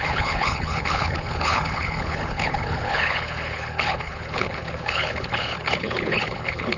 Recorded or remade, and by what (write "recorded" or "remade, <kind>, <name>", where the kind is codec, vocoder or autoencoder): remade, codec, HILCodec